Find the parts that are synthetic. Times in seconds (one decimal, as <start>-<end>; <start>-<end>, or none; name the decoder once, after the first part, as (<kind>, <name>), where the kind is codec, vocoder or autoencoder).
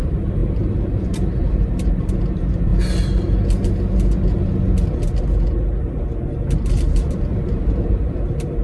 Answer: 0.0-2.7 (vocoder, BigVGAN v2); 7.1-8.6